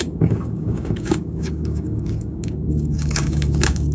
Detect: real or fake fake